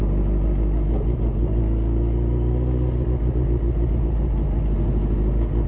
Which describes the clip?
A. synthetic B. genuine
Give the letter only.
B